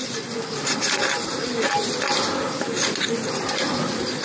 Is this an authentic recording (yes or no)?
yes